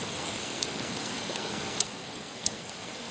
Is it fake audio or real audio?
fake